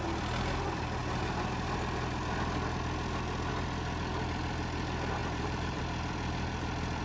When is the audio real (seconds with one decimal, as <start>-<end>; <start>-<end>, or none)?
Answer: 0.0-5.2; 5.8-7.0